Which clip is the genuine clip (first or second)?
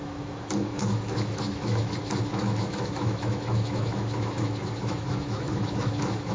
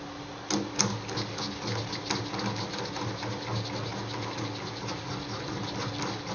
second